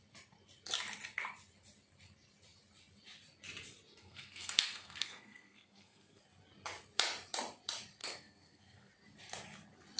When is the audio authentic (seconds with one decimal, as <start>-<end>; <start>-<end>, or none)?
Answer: 0.0-4.0; 6.2-8.0; 8.9-10.0

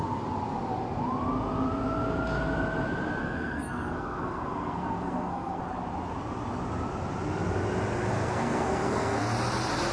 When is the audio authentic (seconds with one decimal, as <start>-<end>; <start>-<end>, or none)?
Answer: 0.0-3.2; 5.6-8.1; 9.2-9.9

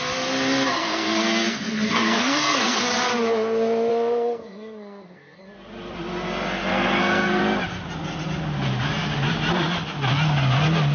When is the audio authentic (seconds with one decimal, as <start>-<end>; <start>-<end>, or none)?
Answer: 0.0-0.7; 2.8-3.9; 5.4-6.7; 7.4-10.9

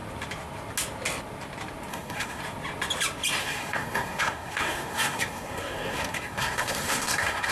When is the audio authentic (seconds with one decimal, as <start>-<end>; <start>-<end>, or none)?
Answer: 0.0-1.9; 2.4-3.4